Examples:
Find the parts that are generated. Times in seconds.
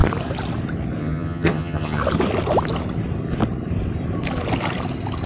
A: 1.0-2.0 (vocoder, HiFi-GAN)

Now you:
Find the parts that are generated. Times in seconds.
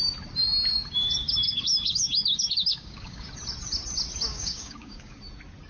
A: 0.7-3.3 (codec, DAC); 4.3-5.2